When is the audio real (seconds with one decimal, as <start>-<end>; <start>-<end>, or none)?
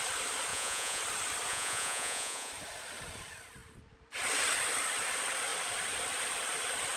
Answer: 0.0-0.5; 1.0-1.5; 2.5-7.0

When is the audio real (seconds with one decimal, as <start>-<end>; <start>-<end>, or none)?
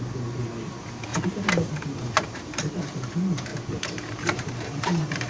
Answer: 0.0-1.1; 2.6-3.5